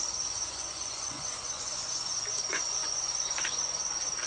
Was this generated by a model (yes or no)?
yes